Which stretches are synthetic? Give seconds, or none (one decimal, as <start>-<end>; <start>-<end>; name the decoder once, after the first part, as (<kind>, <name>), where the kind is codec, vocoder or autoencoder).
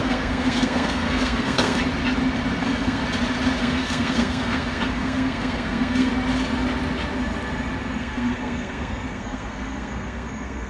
0.0-1.8 (codec, SNAC); 2.6-3.0; 3.6-6.1; 8.0-10.7